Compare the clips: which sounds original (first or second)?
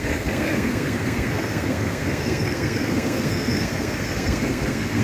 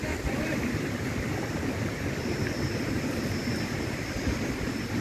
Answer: second